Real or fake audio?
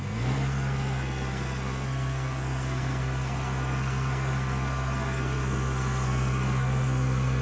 fake